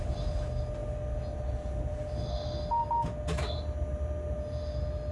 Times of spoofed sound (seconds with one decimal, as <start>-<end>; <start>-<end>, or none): none